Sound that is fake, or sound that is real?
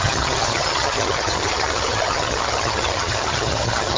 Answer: fake